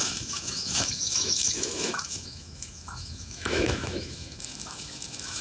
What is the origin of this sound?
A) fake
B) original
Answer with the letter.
A